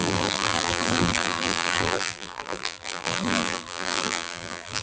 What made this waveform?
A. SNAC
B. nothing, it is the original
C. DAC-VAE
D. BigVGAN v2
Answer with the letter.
D